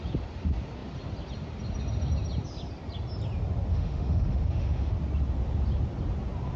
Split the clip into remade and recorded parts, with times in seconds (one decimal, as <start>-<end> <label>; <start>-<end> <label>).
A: 0.0-3.7 recorded; 3.7-4.9 remade; 4.9-6.6 recorded